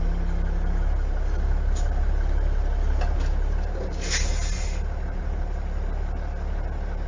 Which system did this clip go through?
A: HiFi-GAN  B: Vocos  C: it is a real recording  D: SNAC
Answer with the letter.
C